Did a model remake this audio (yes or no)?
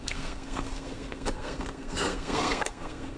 yes